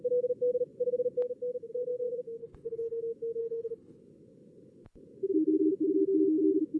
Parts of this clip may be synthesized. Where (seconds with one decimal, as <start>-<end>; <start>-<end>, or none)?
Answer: 2.4-3.0; 3.4-4.0